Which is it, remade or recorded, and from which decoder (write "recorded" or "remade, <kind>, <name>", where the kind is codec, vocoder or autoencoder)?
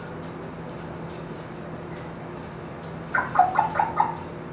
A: recorded